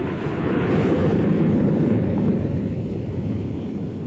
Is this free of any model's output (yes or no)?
no